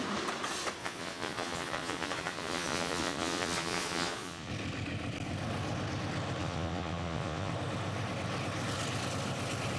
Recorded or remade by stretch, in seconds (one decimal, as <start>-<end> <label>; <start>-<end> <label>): 0.0-0.8 recorded; 0.8-4.5 remade; 4.5-6.4 recorded; 6.4-7.5 remade; 7.5-9.8 recorded